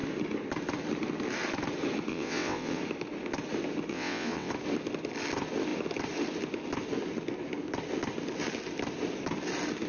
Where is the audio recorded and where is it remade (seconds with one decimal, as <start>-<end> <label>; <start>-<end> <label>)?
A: 0.0-2.1 recorded; 2.1-2.8 remade; 2.8-3.9 recorded; 3.9-4.5 remade; 4.5-9.9 recorded